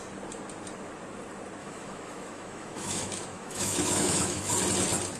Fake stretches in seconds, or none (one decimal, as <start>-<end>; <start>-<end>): 1.6-4.5